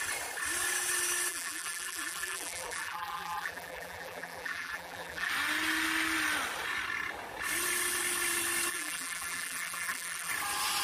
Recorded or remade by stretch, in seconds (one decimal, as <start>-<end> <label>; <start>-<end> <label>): 0.0-1.3 recorded; 1.3-5.3 remade; 5.3-8.7 recorded; 8.7-10.3 remade; 10.3-10.8 recorded